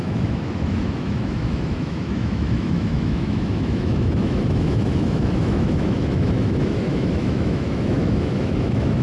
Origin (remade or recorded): remade